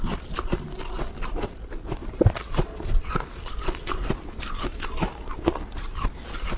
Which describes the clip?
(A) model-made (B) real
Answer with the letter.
B